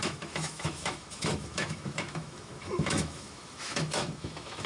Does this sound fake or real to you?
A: fake